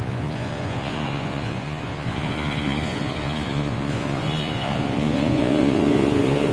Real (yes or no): no